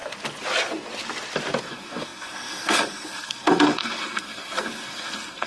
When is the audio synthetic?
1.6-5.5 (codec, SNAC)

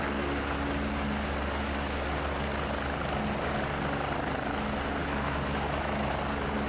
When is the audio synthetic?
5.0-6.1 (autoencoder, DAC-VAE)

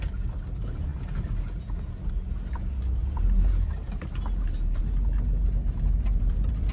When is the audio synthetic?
3.0-4.8 (vocoder, BigVGAN v2)

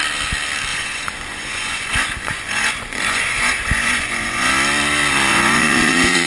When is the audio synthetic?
0.7-4.5 (vocoder, Vocos); 5.3-6.3

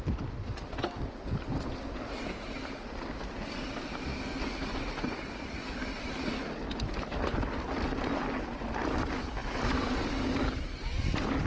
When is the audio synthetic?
none

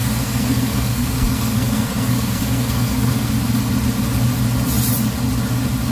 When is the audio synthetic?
0.0-3.3 (codec, SNAC)

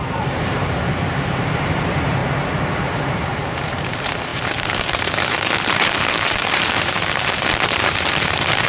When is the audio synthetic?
0.0-2.2 (vocoder, BigVGAN v2); 2.7-8.7